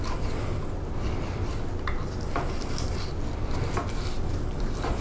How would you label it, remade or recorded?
recorded